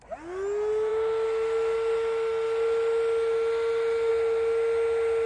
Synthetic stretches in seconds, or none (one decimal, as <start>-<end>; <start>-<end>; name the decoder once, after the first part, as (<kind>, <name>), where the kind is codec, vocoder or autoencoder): none